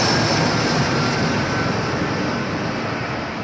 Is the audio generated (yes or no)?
no